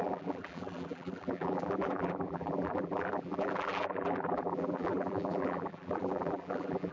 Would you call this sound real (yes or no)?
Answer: no